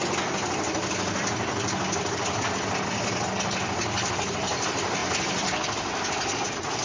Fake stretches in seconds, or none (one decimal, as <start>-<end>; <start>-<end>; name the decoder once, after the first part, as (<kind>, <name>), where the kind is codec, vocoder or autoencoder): none